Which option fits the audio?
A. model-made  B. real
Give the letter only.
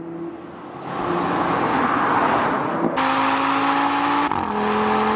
B